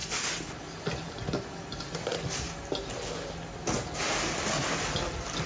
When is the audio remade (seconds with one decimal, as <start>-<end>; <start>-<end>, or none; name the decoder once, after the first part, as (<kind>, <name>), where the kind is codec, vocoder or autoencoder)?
none